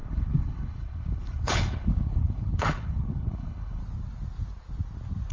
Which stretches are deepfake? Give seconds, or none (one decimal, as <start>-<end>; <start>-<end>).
0.0-3.8